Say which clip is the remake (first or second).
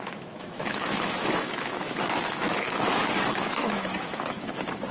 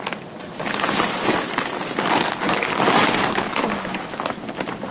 first